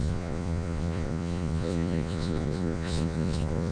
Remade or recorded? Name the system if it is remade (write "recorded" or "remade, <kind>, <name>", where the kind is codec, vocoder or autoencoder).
remade, vocoder, Vocos